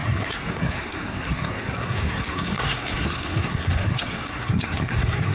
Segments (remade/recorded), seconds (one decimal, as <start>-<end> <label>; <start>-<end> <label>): 0.0-5.3 remade

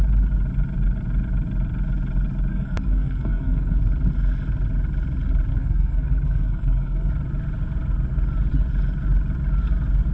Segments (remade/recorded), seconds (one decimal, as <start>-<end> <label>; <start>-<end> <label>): 0.0-2.5 recorded; 2.5-3.8 remade; 3.8-5.5 recorded; 5.5-7.1 remade; 7.1-10.1 recorded

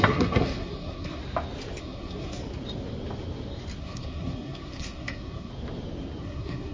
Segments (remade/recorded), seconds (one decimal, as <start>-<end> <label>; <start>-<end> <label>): 0.0-1.2 remade; 1.2-1.8 recorded; 1.8-2.4 remade; 2.4-3.8 recorded; 3.8-5.5 remade; 5.5-6.2 recorded; 6.2-6.7 remade

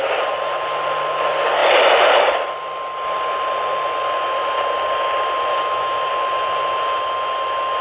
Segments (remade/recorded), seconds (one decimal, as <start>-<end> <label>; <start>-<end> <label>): 0.0-5.5 recorded; 5.5-6.1 remade; 6.1-7.8 recorded

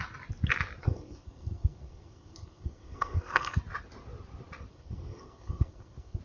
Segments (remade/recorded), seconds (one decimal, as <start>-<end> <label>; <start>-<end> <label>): 0.0-0.8 recorded; 0.8-3.6 remade; 3.6-4.7 recorded; 4.7-6.2 remade

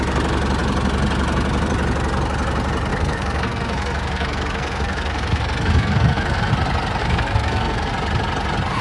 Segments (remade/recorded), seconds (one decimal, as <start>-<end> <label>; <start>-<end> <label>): 0.0-2.9 recorded; 2.9-6.5 remade; 6.5-7.0 recorded; 7.0-7.9 remade; 7.9-8.8 recorded

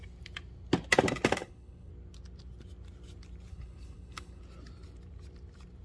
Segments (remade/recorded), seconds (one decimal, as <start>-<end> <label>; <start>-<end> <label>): 0.0-1.4 recorded; 1.4-1.9 remade; 1.9-3.5 recorded; 3.5-4.4 remade; 4.4-5.8 recorded

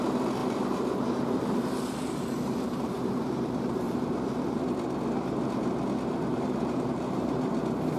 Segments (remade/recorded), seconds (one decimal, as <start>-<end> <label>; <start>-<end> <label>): 0.0-0.4 recorded; 0.4-4.4 remade; 4.4-6.3 recorded; 6.3-7.4 remade; 7.4-8.0 recorded